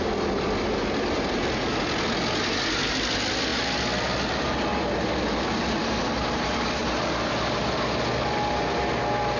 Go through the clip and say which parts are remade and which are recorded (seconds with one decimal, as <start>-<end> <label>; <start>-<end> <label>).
0.0-9.4 recorded